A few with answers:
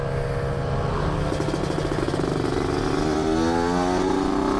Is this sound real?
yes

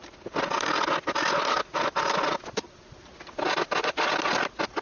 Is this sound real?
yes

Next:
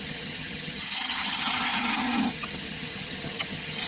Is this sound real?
no